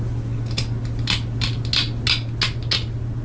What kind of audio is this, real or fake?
real